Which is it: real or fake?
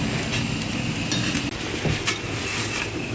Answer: real